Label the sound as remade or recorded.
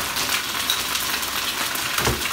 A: recorded